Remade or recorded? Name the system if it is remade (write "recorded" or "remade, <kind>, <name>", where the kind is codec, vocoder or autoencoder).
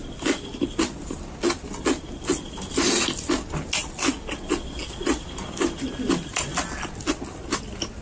recorded